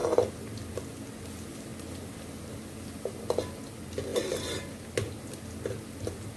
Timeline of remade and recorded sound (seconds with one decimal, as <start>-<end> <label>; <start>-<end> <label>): 0.0-6.4 recorded

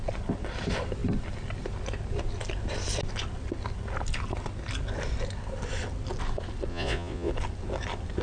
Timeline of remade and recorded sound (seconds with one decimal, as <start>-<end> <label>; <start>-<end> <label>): 0.0-6.7 recorded; 6.7-7.3 remade; 7.3-8.2 recorded

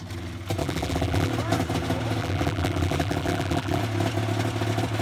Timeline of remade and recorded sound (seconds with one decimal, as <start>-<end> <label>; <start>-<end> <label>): 0.0-0.6 recorded; 0.6-1.3 remade; 1.3-2.2 recorded; 2.2-3.8 remade; 3.8-5.0 recorded

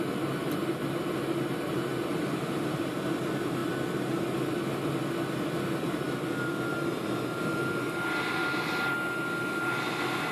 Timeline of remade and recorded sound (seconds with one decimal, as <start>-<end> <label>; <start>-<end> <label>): 0.0-1.9 recorded; 1.9-2.9 remade; 2.9-10.3 recorded

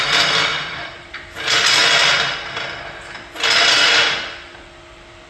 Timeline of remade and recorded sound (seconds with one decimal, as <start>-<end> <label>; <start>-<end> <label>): 0.0-0.5 recorded; 0.5-1.2 remade; 1.2-5.3 recorded

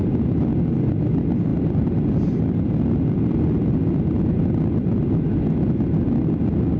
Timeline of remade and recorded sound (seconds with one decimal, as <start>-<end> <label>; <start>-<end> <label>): 0.0-1.5 recorded; 1.5-2.4 remade; 2.4-6.8 recorded